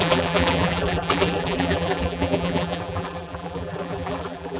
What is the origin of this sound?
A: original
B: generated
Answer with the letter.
B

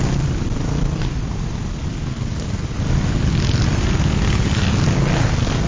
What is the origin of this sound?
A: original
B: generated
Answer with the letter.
A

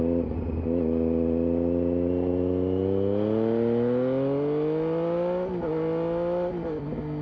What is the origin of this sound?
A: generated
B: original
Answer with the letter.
B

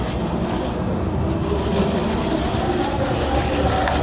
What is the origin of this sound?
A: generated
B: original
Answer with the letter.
B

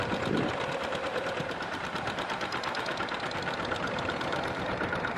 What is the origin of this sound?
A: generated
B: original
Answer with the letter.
A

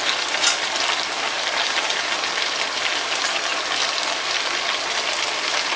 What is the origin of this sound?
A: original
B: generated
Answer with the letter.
A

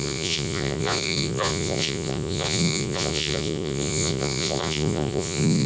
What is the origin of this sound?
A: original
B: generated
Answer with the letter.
B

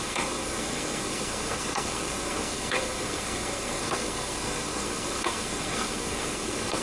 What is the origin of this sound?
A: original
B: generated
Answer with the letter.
B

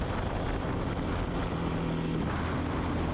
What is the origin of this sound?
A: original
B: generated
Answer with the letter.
A